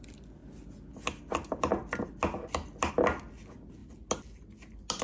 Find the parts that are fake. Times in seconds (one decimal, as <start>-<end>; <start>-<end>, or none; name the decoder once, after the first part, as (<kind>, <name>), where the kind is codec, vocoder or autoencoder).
none